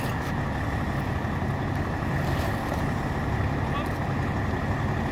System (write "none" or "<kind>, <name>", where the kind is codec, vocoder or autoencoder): none